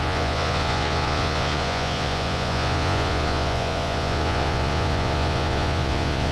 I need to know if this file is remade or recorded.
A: remade